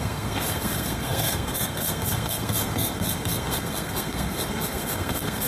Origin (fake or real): fake